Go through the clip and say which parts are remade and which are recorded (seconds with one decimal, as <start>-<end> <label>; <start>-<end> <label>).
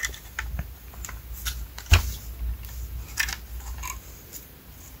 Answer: 0.0-5.0 recorded